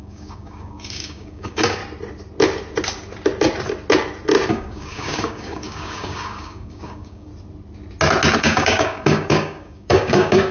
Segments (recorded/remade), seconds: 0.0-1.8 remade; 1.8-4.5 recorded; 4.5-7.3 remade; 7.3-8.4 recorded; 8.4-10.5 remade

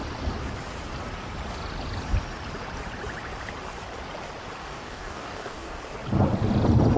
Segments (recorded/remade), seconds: 0.0-4.6 recorded; 4.6-5.8 remade; 5.8-7.0 recorded

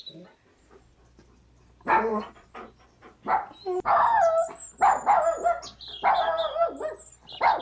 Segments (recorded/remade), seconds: 0.0-7.6 recorded

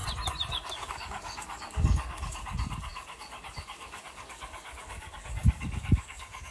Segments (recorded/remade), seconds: 0.0-0.5 recorded; 0.5-6.5 remade

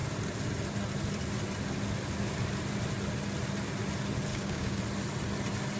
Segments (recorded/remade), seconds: 0.0-4.3 recorded; 4.3-4.8 remade; 4.8-5.8 recorded

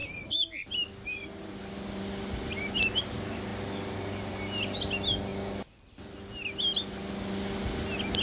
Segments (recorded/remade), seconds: 0.0-8.2 recorded